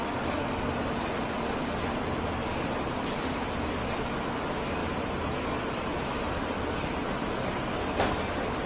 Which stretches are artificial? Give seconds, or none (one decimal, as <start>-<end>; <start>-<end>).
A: none